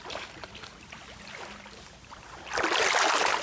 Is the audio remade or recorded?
remade